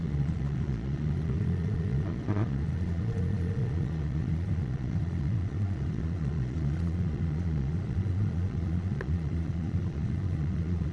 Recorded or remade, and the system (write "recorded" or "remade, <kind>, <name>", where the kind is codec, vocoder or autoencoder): remade, vocoder, Vocos